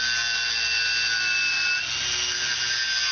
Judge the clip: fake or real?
real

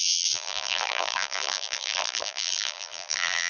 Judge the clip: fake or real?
fake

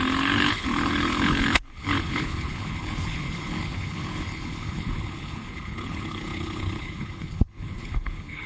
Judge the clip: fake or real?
fake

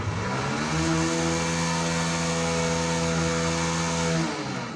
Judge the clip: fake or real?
real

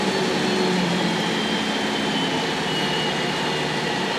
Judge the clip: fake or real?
fake